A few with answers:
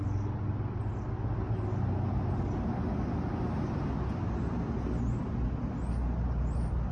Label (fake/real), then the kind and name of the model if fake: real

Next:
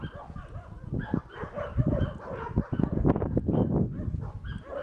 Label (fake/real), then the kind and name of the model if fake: real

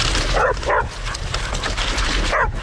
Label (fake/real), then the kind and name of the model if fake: real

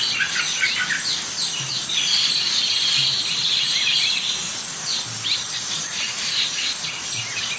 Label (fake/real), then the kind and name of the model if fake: real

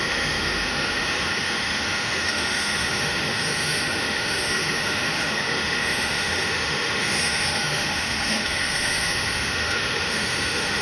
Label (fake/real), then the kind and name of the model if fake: fake, autoencoder, DAC-VAE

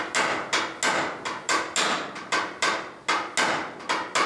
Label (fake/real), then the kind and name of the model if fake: real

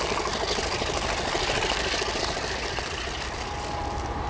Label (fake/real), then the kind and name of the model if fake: real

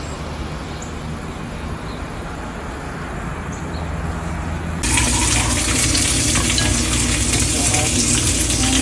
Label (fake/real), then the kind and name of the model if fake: real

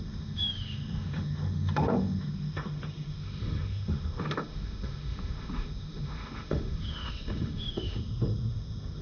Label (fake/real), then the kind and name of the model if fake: fake, autoencoder, DAC-VAE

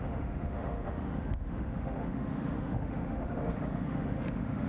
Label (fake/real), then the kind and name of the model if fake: fake, autoencoder, DAC-VAE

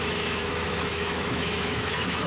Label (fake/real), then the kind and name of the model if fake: fake, autoencoder, DAC-VAE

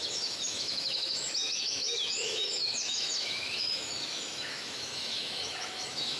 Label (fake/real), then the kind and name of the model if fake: fake, autoencoder, DAC-VAE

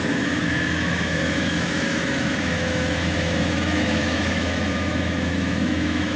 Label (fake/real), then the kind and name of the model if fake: fake, autoencoder, DAC-VAE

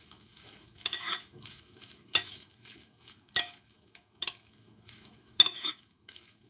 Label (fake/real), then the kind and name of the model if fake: fake, autoencoder, DAC-VAE